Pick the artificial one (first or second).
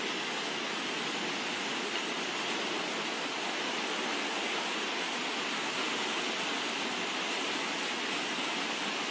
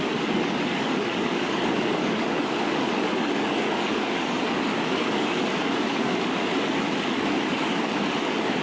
second